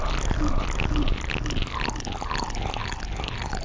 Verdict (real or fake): real